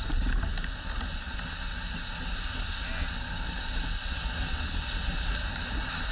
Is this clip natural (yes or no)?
yes